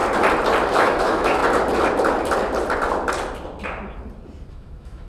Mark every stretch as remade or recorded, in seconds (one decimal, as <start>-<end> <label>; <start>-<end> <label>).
0.0-0.7 recorded; 0.7-1.4 remade; 1.4-4.5 recorded; 4.5-5.1 remade